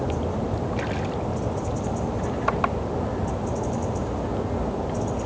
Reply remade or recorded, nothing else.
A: recorded